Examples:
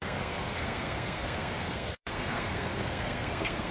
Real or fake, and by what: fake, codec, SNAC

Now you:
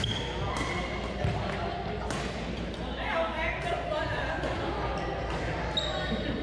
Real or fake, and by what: real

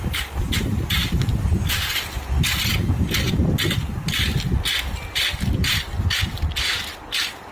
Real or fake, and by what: real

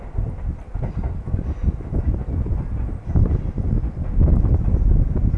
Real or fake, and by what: real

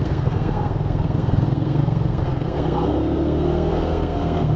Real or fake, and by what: fake, codec, SNAC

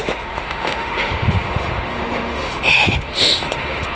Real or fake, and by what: fake, autoencoder, DAC-VAE